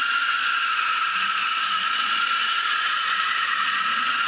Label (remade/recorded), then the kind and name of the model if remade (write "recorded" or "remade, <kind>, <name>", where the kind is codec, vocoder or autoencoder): remade, vocoder, Vocos